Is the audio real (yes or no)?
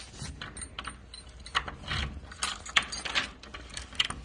yes